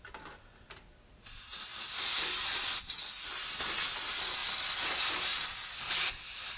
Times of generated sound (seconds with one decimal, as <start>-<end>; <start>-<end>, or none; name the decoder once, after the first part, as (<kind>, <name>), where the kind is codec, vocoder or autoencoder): none